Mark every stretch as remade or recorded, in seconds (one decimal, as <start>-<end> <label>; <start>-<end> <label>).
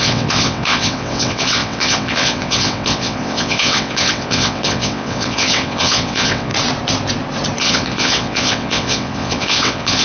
0.0-6.5 remade; 6.5-7.6 recorded; 7.6-10.0 remade